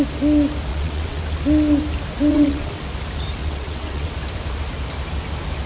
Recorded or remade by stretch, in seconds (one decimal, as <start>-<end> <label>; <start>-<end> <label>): 0.0-0.7 recorded; 0.7-1.2 remade; 1.2-2.3 recorded; 2.3-2.8 remade; 2.8-3.4 recorded; 3.4-4.1 remade; 4.1-5.7 recorded